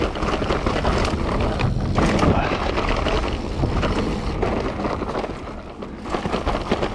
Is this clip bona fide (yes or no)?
yes